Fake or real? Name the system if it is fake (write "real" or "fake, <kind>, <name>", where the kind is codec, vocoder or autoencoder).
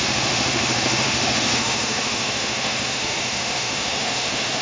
fake, autoencoder, DAC-VAE